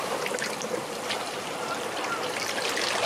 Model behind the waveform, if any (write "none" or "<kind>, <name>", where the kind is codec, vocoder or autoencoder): none